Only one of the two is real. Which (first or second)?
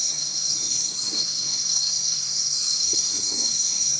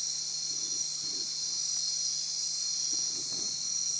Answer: second